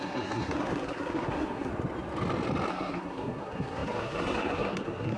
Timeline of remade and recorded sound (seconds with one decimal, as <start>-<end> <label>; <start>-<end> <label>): 0.0-1.7 remade; 1.7-2.7 recorded; 2.7-5.2 remade